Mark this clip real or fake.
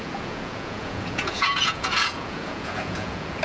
fake